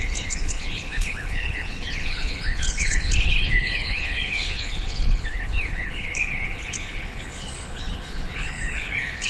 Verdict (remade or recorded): remade